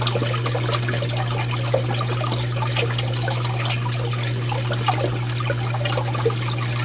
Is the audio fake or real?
real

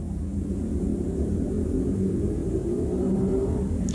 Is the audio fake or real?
fake